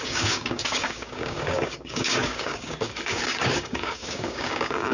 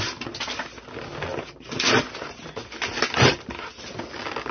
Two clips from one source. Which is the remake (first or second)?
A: first